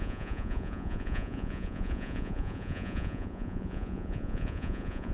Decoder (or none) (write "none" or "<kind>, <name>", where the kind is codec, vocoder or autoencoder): vocoder, Vocos